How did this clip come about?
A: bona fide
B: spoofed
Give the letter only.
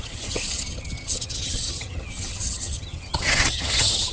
B